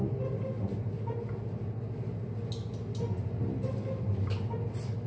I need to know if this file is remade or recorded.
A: recorded